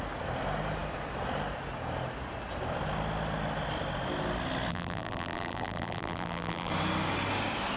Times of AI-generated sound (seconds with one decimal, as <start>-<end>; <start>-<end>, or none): 4.7-6.7